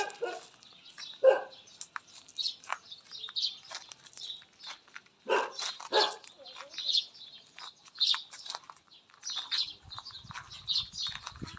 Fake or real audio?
real